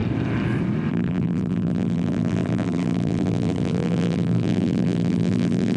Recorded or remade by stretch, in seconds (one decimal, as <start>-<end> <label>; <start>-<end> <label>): 0.0-0.9 recorded; 0.9-5.8 remade